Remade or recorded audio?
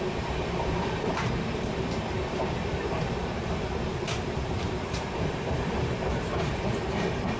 remade